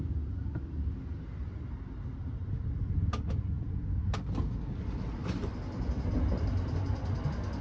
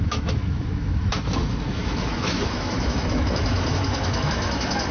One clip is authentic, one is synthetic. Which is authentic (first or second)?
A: first